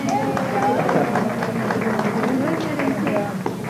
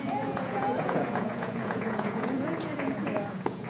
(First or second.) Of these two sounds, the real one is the first